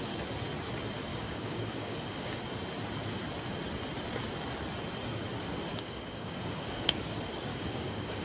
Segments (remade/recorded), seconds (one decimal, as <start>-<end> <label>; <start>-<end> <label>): 0.0-1.1 recorded; 1.1-2.4 remade; 2.4-5.7 recorded; 5.7-7.0 remade; 7.0-7.5 recorded; 7.5-8.2 remade